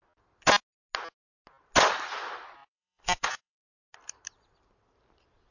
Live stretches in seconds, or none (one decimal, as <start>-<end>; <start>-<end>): 0.0-2.6; 3.8-5.5